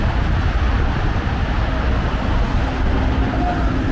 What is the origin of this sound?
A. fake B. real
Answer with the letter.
B